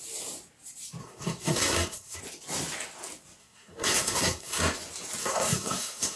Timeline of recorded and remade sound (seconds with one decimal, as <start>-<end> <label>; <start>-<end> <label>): 0.0-1.0 recorded; 1.0-2.2 remade; 2.2-3.4 recorded; 3.4-4.6 remade; 4.6-5.2 recorded; 5.2-6.2 remade